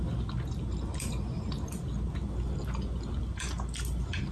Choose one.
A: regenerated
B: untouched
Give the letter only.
B